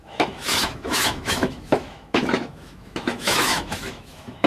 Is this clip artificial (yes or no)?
yes